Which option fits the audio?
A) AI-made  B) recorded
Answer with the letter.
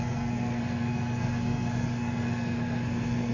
A